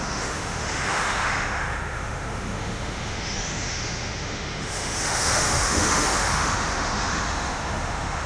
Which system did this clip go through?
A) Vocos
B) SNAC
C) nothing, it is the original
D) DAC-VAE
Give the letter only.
D